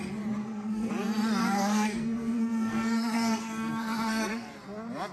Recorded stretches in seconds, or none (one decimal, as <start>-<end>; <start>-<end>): 0.0-0.4; 0.9-1.4; 4.5-5.1